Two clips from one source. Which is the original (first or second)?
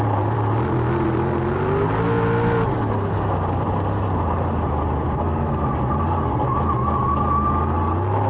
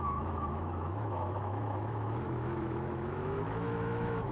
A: first